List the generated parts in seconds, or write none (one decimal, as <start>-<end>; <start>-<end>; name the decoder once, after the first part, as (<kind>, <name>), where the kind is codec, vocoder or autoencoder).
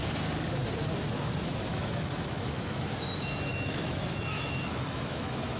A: 1.7-2.8 (autoencoder, DAC-VAE); 3.5-5.6